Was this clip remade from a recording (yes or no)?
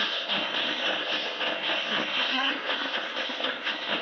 yes